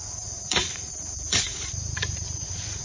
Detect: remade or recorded remade